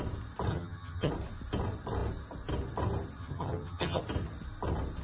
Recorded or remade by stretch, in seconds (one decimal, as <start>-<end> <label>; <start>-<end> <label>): 0.0-0.5 recorded; 0.5-1.1 remade; 1.1-3.2 recorded; 3.2-4.0 remade; 4.0-5.0 recorded